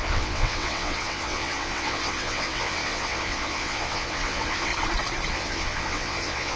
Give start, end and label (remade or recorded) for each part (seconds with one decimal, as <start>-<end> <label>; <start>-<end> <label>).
0.0-4.7 remade; 4.7-5.3 recorded; 5.3-6.6 remade